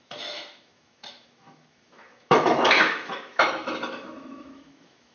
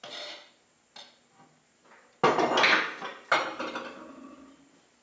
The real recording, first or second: second